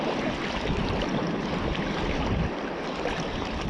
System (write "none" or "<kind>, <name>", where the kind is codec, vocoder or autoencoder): none